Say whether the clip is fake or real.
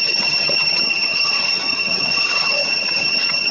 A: fake